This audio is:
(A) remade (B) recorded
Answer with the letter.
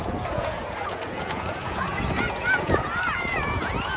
A